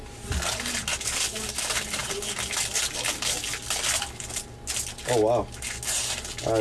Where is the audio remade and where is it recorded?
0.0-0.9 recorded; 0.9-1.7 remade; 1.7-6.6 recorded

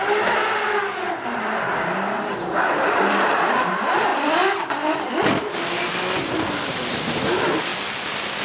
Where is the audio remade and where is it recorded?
0.0-8.4 recorded

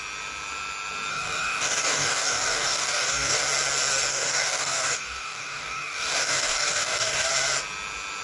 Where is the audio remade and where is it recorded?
0.0-1.1 recorded; 1.1-3.4 remade; 3.4-4.1 recorded; 4.1-7.3 remade; 7.3-8.2 recorded

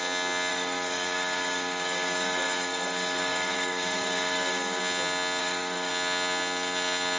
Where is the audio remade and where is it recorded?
0.0-0.5 recorded; 0.5-4.8 remade; 4.8-5.4 recorded; 5.4-5.9 remade; 5.9-7.2 recorded